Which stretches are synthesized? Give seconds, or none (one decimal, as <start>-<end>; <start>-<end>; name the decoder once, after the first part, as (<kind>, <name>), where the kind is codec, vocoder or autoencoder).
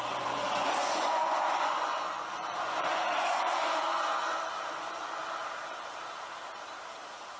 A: 0.0-4.1 (vocoder, Vocos); 4.8-5.2